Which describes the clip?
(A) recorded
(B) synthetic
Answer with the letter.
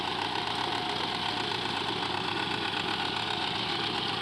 A